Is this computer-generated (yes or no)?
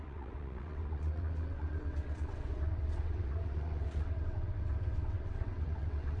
yes